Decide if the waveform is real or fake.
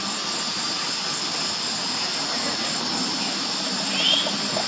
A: real